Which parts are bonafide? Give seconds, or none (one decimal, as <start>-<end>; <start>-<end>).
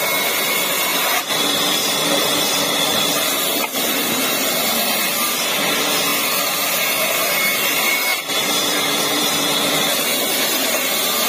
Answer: 6.1-7.1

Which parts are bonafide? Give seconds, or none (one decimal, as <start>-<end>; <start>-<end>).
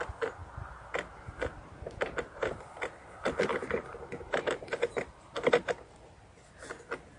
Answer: 0.0-0.4; 2.7-3.5; 6.0-7.2